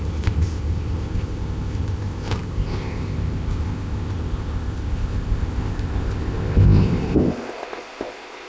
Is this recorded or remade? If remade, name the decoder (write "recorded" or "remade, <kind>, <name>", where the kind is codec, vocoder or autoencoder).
remade, codec, ZipCodec